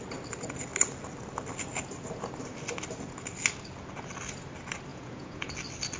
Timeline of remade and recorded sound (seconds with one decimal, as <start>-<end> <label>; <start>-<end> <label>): 0.0-4.9 recorded; 4.9-5.5 remade; 5.5-6.0 recorded